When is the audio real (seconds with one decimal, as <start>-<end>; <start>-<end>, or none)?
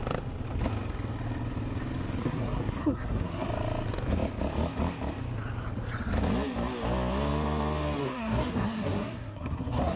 0.0-2.2; 3.5-8.0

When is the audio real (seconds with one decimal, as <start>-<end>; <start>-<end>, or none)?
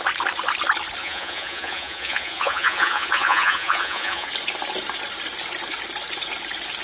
0.0-1.0; 4.3-6.8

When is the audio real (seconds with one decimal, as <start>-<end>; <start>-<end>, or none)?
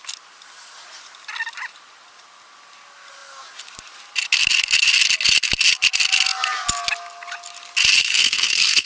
0.0-8.1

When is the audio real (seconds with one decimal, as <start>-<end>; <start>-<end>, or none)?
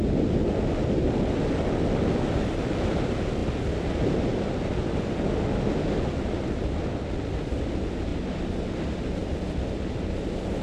0.0-8.1; 8.7-10.6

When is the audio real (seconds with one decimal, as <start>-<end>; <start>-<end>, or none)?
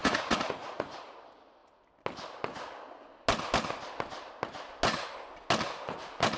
0.9-6.4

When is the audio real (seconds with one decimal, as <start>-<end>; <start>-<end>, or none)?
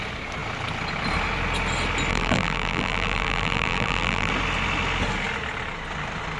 0.0-2.1; 4.3-6.4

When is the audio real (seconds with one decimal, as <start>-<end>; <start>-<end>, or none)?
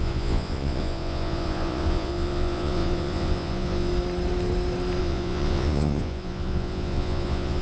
3.9-5.0